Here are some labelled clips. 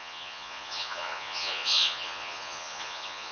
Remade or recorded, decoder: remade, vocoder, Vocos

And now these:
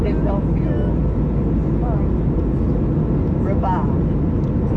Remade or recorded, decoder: recorded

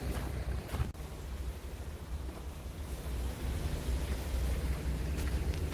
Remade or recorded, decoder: recorded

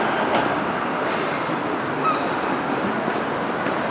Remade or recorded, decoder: recorded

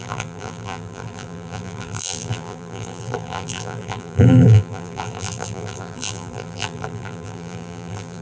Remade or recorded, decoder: remade, vocoder, BigVGAN v2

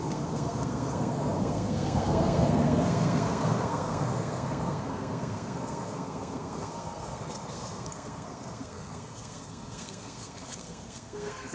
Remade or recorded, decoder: remade, codec, SNAC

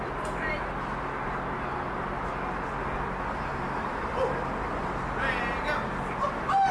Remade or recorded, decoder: recorded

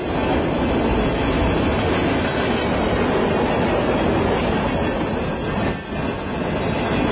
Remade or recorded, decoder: recorded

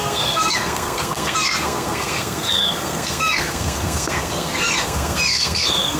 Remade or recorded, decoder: remade, codec, SNAC